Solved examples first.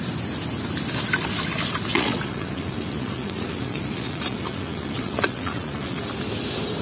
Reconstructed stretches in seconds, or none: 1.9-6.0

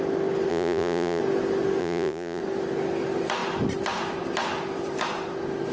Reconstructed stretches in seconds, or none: 0.5-1.2; 1.8-2.4

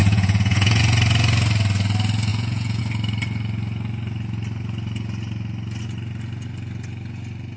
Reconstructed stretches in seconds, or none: 0.0-0.8; 2.3-2.8

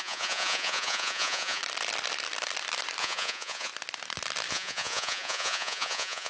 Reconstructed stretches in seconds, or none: 0.0-1.6; 3.0-3.7; 4.5-6.3

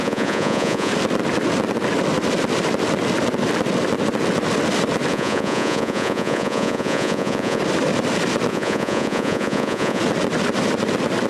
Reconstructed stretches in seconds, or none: 0.0-0.9; 5.1-7.6; 8.5-10.0

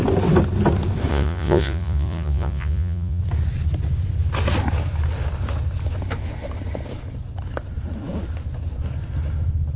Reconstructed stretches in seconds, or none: 1.1-3.2